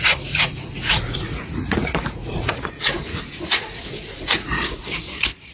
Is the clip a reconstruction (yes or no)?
yes